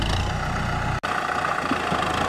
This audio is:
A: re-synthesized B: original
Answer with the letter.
B